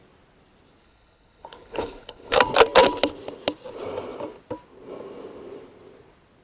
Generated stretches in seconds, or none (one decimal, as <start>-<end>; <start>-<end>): 0.8-2.4